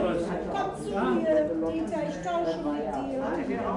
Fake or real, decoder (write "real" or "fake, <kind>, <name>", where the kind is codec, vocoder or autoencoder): real